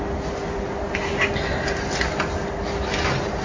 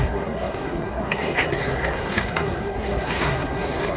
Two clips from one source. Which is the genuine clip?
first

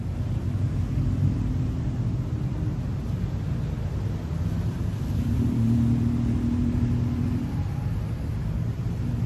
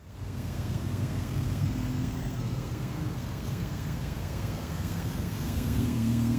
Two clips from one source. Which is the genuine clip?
first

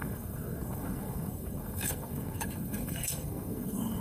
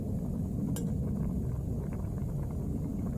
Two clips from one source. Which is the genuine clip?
second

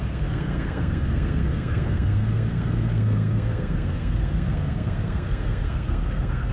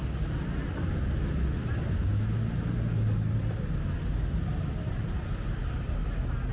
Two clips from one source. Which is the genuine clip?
second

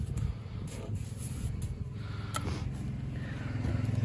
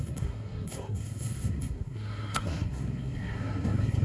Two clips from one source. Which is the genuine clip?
first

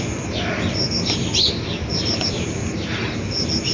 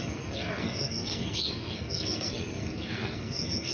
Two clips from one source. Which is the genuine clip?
first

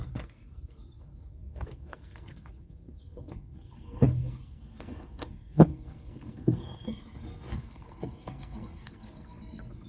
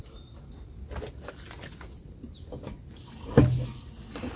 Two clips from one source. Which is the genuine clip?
second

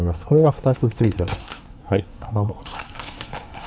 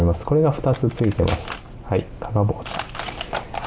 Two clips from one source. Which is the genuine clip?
second